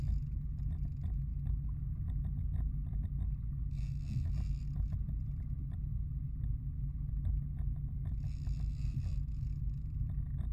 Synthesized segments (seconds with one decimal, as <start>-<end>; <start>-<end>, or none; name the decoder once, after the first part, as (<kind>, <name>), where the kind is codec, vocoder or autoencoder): none